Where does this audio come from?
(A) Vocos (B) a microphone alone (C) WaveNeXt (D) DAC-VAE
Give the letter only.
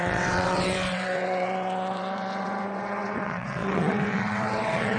C